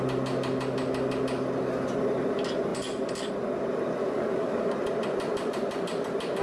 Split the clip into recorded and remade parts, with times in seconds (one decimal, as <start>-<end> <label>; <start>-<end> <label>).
0.0-4.0 recorded; 4.0-4.7 remade; 4.7-6.4 recorded